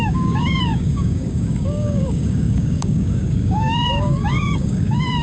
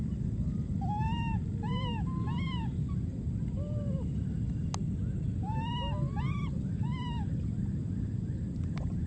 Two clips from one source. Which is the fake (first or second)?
first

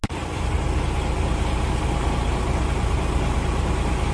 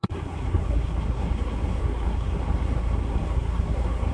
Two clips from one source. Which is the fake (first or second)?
second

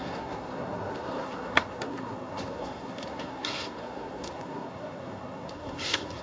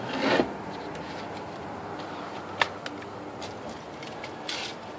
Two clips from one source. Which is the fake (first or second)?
first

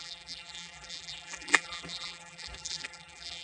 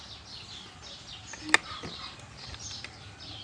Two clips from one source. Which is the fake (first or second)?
first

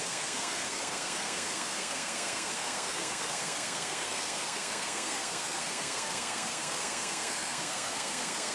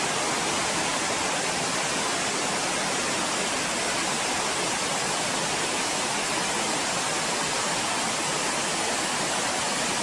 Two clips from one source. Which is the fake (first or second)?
first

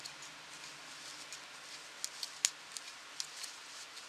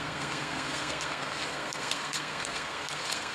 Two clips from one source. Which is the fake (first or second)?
second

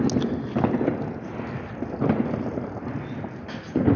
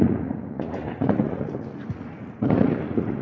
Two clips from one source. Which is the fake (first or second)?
second